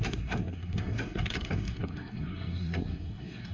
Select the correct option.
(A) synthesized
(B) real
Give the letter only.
A